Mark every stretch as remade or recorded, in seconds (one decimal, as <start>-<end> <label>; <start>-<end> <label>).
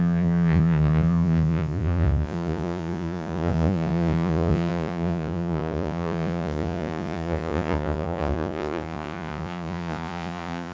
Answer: 0.0-10.7 remade